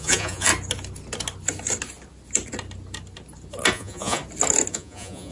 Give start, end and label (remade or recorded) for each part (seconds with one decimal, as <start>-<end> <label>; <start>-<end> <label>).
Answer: 0.0-0.5 remade; 0.5-3.7 recorded; 3.7-4.2 remade; 4.2-4.7 recorded; 4.7-5.3 remade